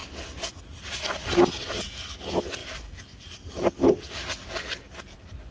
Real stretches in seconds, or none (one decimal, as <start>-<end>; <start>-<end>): 0.0-2.6; 3.5-5.5